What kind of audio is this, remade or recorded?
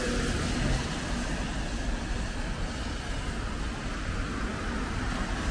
recorded